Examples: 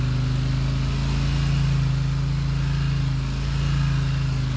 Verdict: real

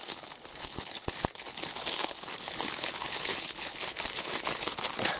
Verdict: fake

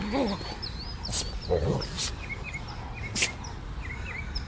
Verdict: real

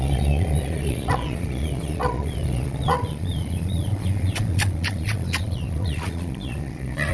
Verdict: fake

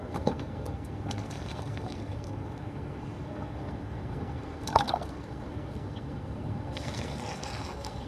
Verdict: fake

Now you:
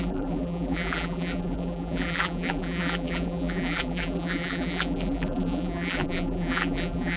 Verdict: fake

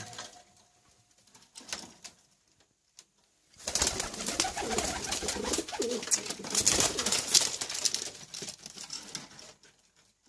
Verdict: real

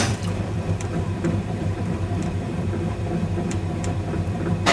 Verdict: fake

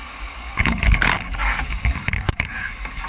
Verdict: fake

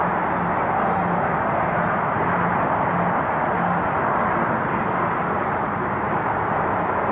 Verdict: real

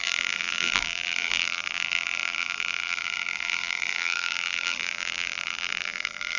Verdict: fake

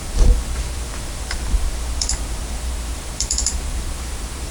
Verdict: fake